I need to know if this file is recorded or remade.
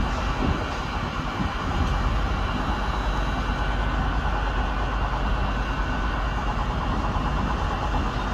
recorded